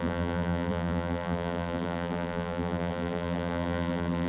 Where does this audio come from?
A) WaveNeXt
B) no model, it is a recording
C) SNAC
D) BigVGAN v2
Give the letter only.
D